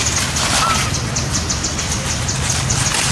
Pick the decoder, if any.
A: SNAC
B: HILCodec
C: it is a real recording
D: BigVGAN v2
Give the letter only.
C